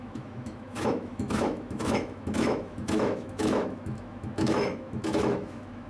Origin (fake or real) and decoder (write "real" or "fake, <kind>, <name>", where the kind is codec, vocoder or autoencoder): fake, autoencoder, DAC-VAE